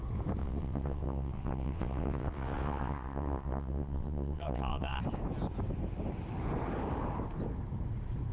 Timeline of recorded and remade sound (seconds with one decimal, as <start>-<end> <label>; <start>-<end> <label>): 0.0-0.4 recorded; 0.4-5.0 remade; 5.0-8.3 recorded